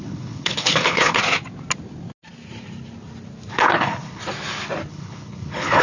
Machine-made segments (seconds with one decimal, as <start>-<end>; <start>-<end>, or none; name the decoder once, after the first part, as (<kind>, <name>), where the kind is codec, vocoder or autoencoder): 0.0-1.2 (codec, HILCodec); 3.5-4.2; 4.9-5.8